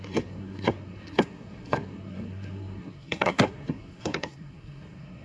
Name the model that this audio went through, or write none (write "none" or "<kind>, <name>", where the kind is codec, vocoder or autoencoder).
codec, SNAC